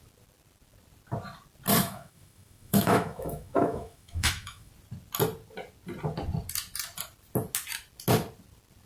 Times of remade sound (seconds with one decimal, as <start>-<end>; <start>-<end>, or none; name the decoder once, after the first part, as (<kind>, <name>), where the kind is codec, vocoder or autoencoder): 1.8-4.7 (autoencoder, DAC-VAE)